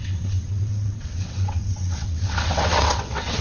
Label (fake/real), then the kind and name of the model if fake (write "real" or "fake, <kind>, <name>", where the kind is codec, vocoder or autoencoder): fake, vocoder, WaveNeXt